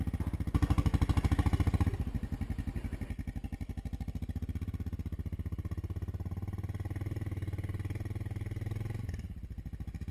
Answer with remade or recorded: recorded